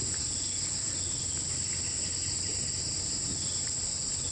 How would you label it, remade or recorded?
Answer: recorded